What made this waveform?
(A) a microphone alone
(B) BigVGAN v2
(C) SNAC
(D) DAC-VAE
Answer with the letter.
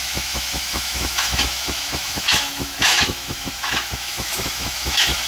D